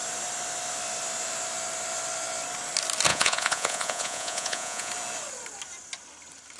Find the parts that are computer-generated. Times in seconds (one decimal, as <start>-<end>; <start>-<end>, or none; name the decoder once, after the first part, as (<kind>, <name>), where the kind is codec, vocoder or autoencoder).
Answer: 3.1-4.9 (vocoder, Vocos)